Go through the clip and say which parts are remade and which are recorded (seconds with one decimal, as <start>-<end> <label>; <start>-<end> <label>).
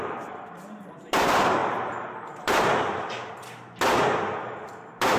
0.0-5.2 remade